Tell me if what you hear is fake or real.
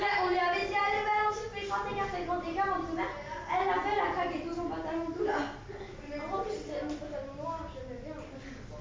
real